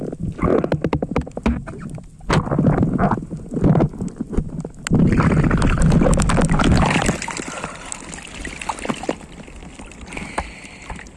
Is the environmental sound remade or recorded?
recorded